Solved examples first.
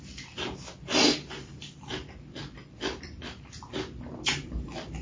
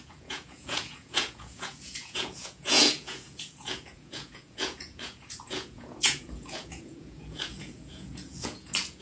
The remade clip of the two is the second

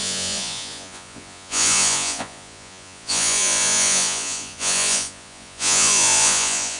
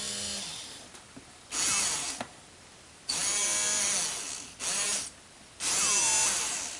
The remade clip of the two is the first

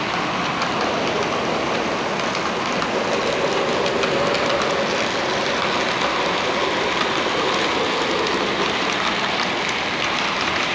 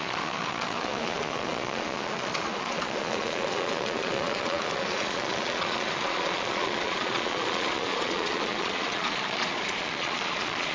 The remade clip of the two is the second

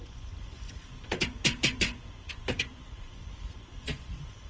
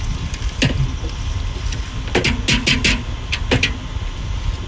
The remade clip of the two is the first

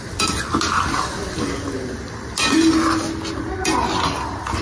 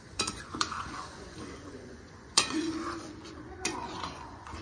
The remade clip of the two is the second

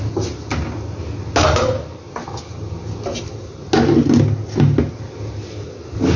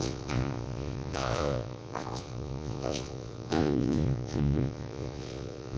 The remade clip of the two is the second